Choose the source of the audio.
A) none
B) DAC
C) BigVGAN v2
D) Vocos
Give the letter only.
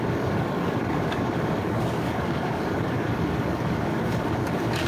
B